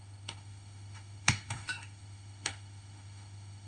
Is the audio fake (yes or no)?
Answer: yes